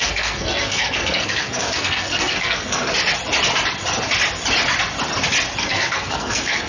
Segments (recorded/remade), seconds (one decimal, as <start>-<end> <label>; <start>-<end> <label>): 0.0-2.9 remade; 2.9-5.6 recorded; 5.6-6.7 remade